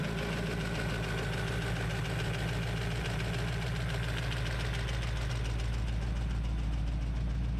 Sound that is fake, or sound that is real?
real